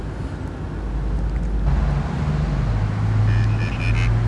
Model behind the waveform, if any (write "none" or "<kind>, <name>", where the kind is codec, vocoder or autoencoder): none